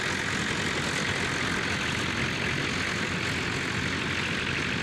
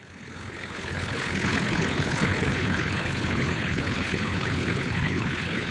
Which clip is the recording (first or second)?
first